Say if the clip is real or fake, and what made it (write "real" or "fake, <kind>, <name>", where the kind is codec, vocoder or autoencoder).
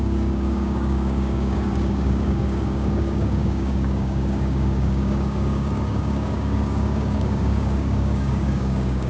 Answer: fake, codec, DAC